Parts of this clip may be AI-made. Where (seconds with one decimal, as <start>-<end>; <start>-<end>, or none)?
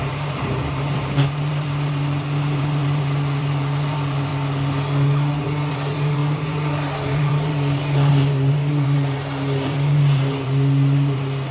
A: 0.0-4.3; 5.7-11.5